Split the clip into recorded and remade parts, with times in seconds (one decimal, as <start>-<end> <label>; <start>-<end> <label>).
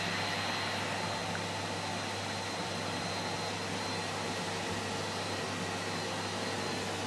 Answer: 0.0-1.2 recorded; 1.2-3.1 remade; 3.1-7.1 recorded